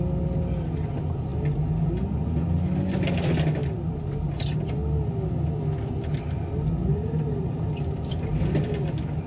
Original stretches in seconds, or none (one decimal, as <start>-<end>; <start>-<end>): 0.0-9.3